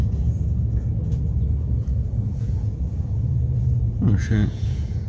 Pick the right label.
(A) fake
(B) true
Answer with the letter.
A